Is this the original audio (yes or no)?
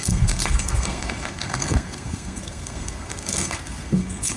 no